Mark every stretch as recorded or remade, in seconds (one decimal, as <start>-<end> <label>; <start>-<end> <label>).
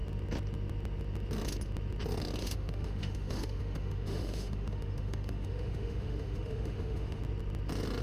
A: 0.0-2.4 recorded; 2.4-7.2 remade; 7.2-8.0 recorded